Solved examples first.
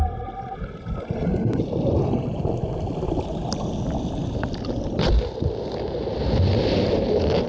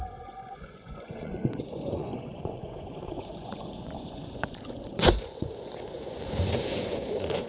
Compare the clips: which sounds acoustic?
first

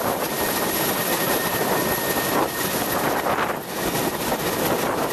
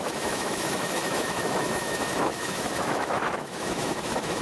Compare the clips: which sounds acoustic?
first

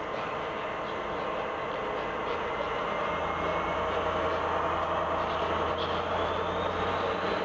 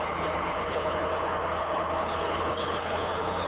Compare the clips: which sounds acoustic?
first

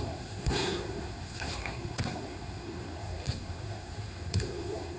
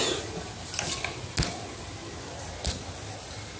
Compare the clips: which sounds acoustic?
second